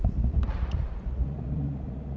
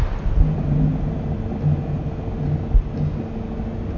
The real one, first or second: second